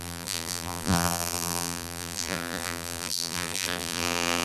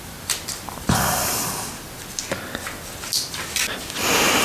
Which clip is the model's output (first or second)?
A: first